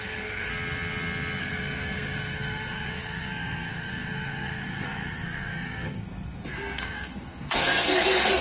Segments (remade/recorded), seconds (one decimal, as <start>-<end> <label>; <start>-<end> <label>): 0.0-0.5 remade; 0.5-1.4 recorded; 1.4-8.4 remade